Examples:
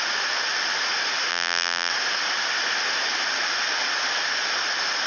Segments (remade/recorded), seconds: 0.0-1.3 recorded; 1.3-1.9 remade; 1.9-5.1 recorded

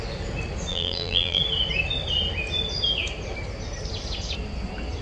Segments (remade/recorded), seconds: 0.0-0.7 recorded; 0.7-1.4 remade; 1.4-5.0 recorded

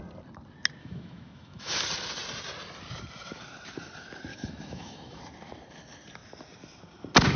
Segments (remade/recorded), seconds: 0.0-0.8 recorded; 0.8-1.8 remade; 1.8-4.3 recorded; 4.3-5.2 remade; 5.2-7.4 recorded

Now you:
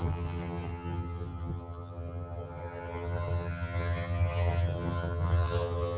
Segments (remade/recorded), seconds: 0.0-6.0 remade

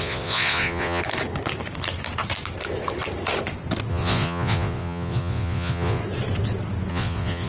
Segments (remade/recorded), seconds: 0.0-1.0 remade; 1.0-3.9 recorded; 3.9-6.0 remade; 6.0-6.9 recorded; 6.9-7.5 remade

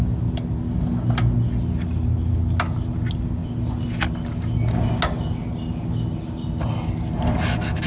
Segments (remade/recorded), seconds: 0.0-7.9 recorded

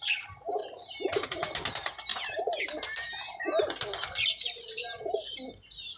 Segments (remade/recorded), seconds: 0.0-6.0 recorded

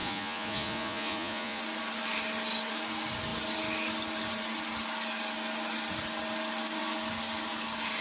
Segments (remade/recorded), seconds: 0.0-1.6 remade; 1.6-8.0 recorded